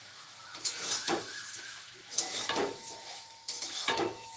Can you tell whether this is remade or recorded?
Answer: remade